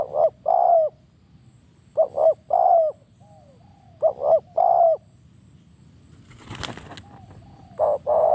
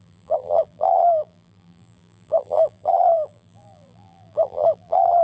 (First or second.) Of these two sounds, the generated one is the second